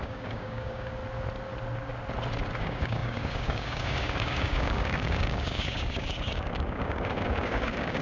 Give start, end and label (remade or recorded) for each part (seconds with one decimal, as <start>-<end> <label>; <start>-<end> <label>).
0.0-1.0 remade; 1.0-2.6 recorded; 2.6-8.0 remade